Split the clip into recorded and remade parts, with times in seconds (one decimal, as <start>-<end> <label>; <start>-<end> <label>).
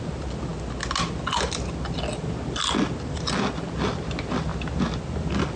0.0-5.6 recorded